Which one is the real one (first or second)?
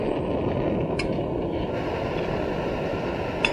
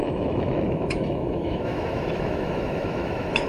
first